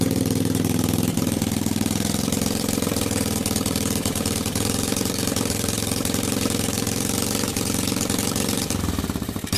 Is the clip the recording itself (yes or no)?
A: no